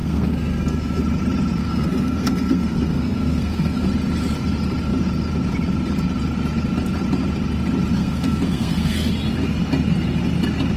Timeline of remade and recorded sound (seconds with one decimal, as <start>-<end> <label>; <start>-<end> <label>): 0.0-1.0 remade; 1.0-1.6 recorded; 1.6-3.9 remade; 3.9-8.0 recorded; 8.0-9.1 remade; 9.1-10.8 recorded